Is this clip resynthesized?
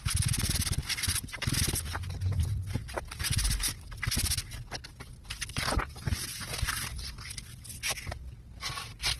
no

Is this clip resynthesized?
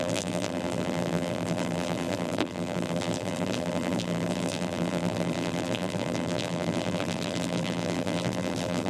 yes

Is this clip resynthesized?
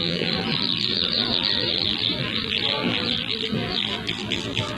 yes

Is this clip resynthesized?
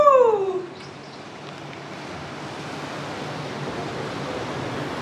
no